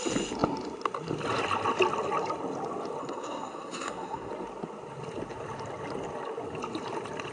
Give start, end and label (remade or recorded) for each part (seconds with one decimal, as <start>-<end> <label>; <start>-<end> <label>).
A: 0.0-3.0 recorded; 3.0-4.3 remade; 4.3-7.3 recorded